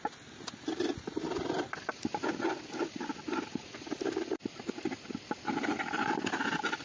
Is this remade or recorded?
recorded